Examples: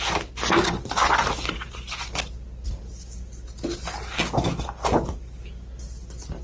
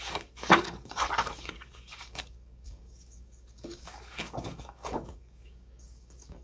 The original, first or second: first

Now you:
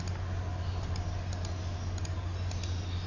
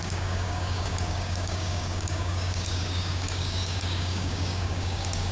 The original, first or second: first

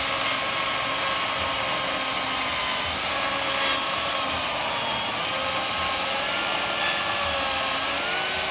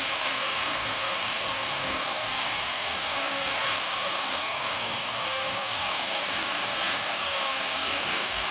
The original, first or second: first